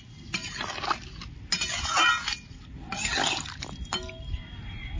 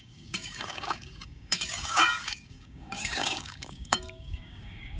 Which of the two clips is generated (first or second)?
second